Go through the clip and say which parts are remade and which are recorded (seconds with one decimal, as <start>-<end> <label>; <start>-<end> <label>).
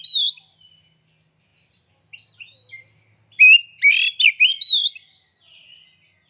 0.0-6.3 recorded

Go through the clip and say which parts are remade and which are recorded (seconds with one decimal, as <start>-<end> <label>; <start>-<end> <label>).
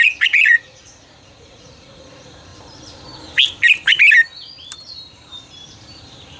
0.0-2.5 remade; 2.5-6.4 recorded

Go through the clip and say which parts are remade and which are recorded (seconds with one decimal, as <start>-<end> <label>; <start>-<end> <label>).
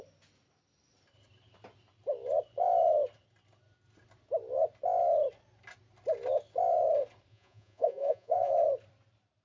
0.0-7.3 recorded; 7.3-8.5 remade; 8.5-9.4 recorded